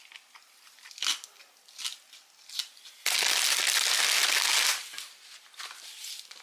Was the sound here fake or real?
real